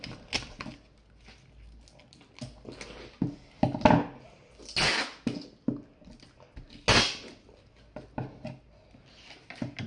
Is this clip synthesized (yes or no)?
no